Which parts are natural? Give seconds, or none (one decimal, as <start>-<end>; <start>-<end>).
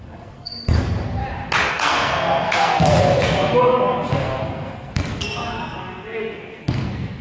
1.2-1.7